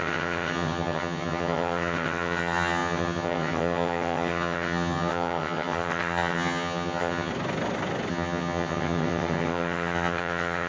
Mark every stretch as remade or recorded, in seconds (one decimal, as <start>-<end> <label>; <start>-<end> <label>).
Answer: 0.0-7.3 remade; 7.3-8.1 recorded; 8.1-10.7 remade